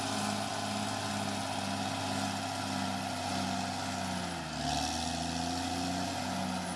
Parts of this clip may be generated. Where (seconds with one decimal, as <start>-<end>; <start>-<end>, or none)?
none